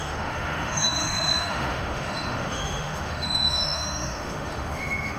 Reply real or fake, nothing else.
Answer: fake